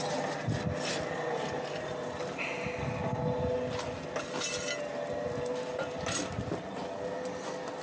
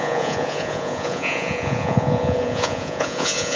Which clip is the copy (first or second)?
second